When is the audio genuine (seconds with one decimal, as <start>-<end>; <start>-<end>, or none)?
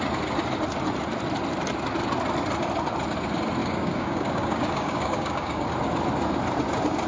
0.0-3.6; 5.7-7.1